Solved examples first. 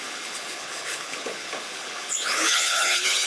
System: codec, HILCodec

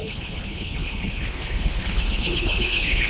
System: codec, HILCodec